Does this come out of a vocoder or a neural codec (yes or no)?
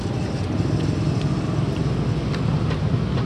no